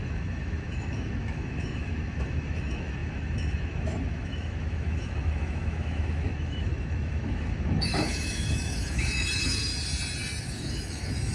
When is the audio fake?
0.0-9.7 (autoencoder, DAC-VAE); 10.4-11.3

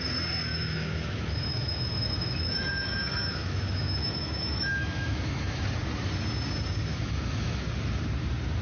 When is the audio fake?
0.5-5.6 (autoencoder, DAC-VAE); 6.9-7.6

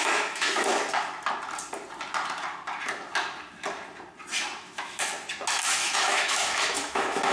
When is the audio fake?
0.0-0.7 (autoencoder, DAC-VAE); 4.6-5.1; 5.7-7.3

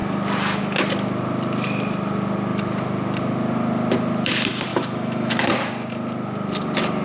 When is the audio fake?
4.7-5.5 (autoencoder, DAC-VAE)

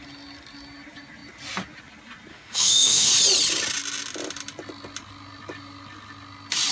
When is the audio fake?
2.3-3.1 (autoencoder, DAC-VAE)

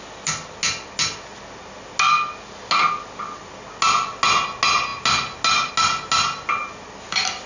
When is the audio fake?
none

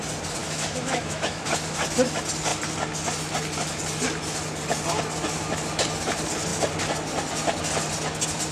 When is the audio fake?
0.4-1.4 (autoencoder, DAC-VAE)